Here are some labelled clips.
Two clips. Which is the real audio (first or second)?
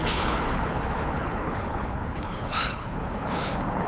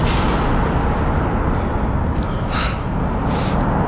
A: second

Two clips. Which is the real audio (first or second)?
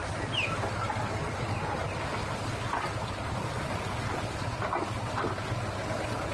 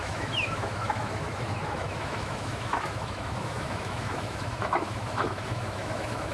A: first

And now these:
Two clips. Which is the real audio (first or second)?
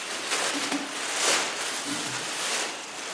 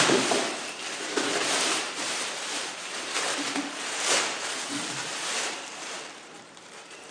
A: first